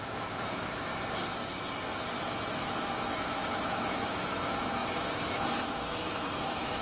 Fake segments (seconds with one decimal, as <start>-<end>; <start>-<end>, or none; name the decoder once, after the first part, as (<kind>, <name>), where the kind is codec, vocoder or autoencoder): 0.0-0.9 (autoencoder, DAC-VAE); 2.5-6.8